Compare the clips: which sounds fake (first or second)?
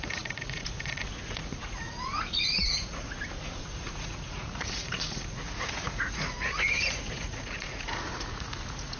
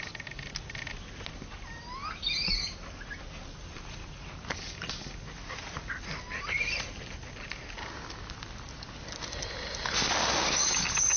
first